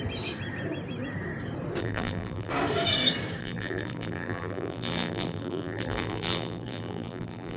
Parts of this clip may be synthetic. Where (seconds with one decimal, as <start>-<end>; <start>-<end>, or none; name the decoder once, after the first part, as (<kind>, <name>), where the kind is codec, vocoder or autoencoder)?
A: 1.8-2.5 (vocoder, BigVGAN v2); 3.4-7.6